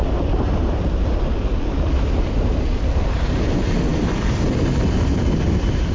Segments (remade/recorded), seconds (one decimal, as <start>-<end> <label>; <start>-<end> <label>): 0.0-5.9 recorded